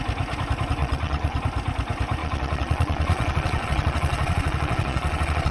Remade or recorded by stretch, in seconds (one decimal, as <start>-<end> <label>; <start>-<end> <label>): 0.0-0.8 recorded; 0.8-1.4 remade; 1.4-2.2 recorded; 2.2-5.5 remade